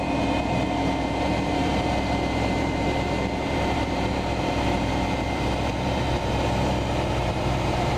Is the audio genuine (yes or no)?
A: no